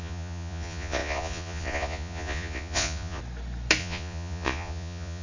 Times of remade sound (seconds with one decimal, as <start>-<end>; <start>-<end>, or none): 0.0-3.2; 3.8-5.2